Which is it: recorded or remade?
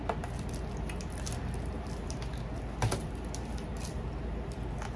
recorded